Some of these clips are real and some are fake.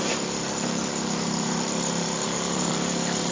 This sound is fake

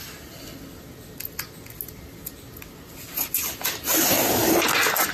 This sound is real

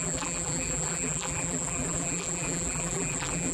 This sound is fake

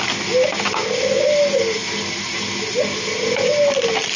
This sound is real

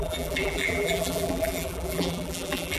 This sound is fake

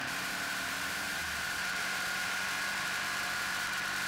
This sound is fake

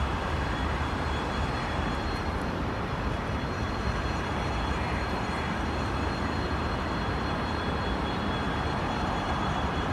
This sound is fake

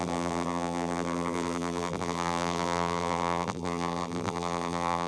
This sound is fake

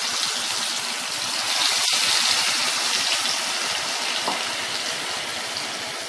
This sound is real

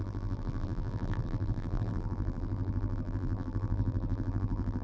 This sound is fake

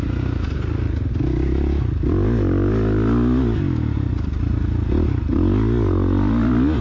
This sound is real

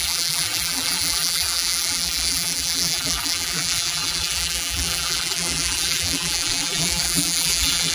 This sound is fake